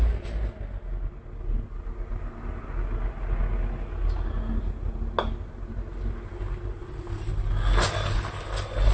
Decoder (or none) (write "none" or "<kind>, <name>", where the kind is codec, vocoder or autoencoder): none